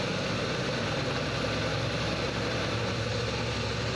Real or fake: real